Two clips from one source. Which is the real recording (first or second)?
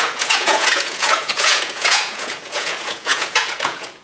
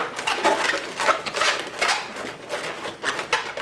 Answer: second